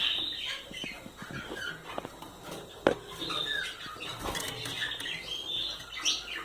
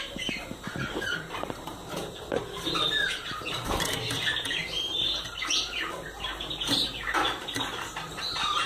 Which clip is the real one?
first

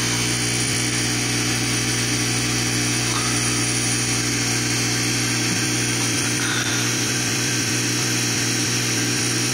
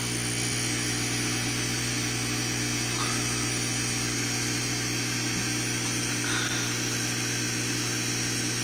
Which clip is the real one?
second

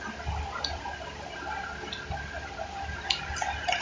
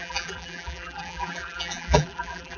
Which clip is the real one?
first